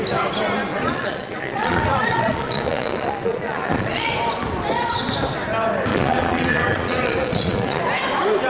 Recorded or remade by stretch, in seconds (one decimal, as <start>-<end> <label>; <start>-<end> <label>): 0.0-0.7 recorded; 0.7-4.1 remade; 4.1-5.9 recorded; 5.9-7.8 remade; 7.8-8.5 recorded